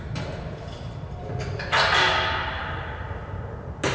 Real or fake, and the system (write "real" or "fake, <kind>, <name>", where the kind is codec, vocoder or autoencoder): real